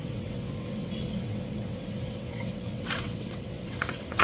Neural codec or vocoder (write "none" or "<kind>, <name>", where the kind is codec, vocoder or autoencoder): vocoder, WaveNeXt